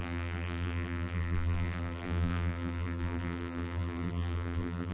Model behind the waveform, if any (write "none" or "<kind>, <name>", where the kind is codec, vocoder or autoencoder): vocoder, BigVGAN v2